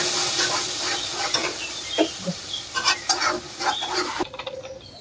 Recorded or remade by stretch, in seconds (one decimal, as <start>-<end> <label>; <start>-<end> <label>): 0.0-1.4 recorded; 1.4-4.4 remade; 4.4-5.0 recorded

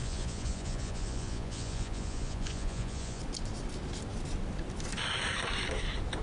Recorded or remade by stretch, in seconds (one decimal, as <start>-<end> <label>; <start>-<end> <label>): 0.0-3.2 remade; 3.2-6.2 recorded

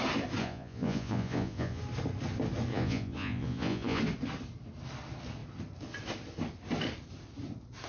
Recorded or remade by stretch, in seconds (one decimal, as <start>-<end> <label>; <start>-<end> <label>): 0.0-0.4 recorded; 0.4-1.8 remade; 1.8-2.7 recorded; 2.7-4.0 remade; 4.0-7.9 recorded

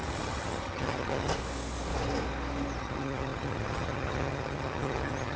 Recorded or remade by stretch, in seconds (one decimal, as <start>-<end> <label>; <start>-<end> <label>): 0.0-1.3 remade; 1.3-2.8 recorded; 2.8-5.4 remade

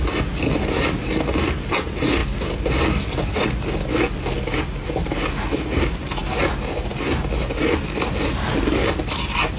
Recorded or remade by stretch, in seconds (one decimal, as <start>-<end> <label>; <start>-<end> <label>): 0.0-9.6 recorded

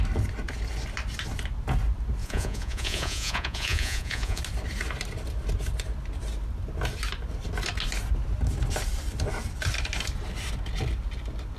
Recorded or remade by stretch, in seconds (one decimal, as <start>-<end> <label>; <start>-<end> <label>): 0.0-2.2 recorded; 2.2-4.4 remade; 4.4-11.6 recorded

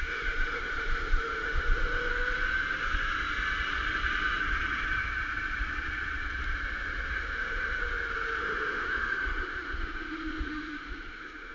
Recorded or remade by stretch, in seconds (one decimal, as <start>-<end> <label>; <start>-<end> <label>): 0.0-2.1 remade; 2.1-7.1 recorded; 7.1-7.8 remade; 7.8-8.4 recorded; 8.4-11.5 remade

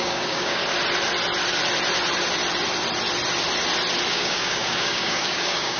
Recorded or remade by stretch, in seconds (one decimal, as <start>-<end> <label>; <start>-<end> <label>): 0.0-0.6 remade; 0.6-4.1 recorded; 4.1-5.8 remade